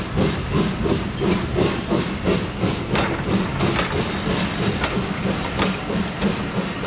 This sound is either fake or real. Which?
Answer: real